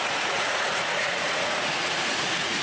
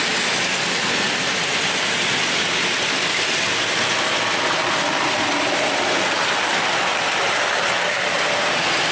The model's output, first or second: first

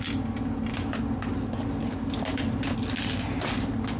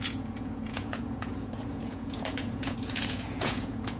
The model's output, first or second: second